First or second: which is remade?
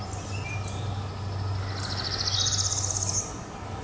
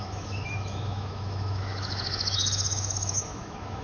second